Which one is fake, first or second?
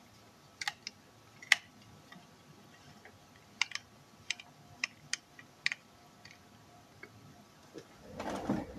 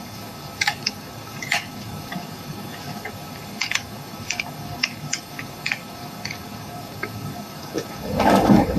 second